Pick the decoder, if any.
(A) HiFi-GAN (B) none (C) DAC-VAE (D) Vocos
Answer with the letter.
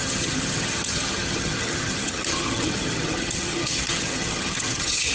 A